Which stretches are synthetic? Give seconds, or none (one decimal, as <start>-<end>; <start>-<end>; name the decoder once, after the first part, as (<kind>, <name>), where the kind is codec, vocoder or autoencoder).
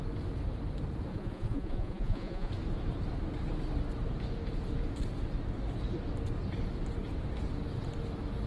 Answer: 1.1-2.5 (vocoder, Vocos)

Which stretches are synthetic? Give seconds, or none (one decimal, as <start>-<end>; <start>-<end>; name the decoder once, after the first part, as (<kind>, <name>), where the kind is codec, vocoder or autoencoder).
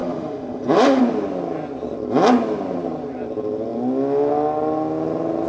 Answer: 0.0-1.0 (autoencoder, DAC-VAE)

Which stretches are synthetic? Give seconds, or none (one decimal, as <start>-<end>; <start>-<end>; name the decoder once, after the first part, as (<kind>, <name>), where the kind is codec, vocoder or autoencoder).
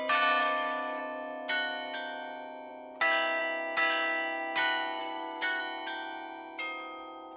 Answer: 0.4-1.0 (codec, DAC); 5.0-5.6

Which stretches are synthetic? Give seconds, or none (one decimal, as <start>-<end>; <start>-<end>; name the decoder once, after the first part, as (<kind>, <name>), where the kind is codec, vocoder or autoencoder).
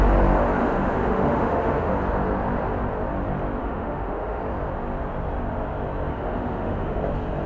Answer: 0.6-1.9 (autoencoder, DAC-VAE); 3.6-4.4; 6.1-7.0